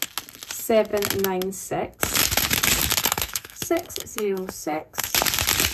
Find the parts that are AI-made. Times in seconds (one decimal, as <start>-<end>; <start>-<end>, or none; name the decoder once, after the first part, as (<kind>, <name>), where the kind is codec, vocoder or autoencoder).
3.0-5.1 (codec, SNAC)